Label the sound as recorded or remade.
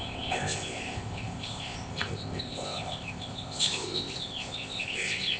remade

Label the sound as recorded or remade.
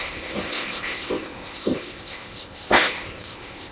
remade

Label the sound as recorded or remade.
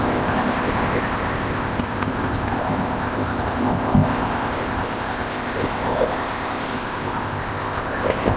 remade